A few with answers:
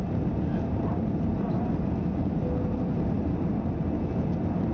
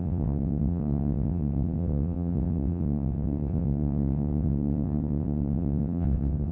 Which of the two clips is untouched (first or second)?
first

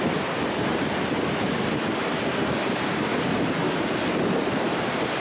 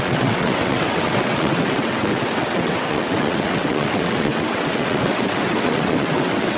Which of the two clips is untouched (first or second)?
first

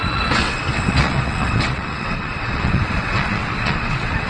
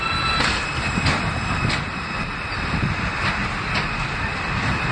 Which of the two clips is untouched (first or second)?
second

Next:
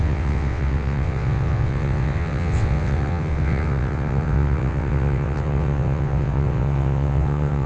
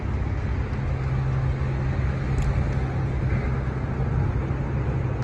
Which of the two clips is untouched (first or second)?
second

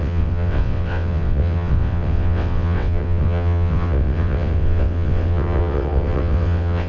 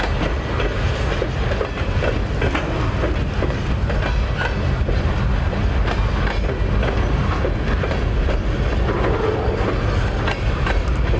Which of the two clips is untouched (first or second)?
second